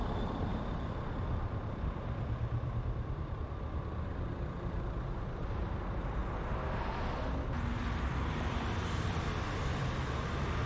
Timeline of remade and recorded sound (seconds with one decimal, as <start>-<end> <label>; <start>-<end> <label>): 0.0-6.2 remade; 6.2-8.5 recorded; 8.5-10.7 remade